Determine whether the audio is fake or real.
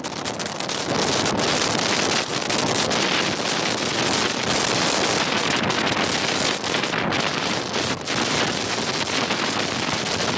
real